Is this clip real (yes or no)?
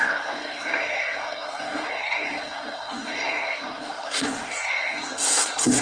no